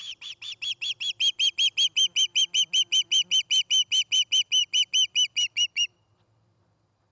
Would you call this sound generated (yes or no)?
yes